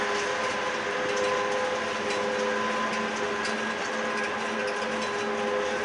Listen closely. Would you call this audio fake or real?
real